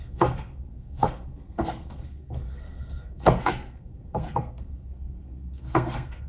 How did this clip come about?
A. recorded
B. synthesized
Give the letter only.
B